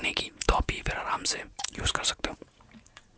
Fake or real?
fake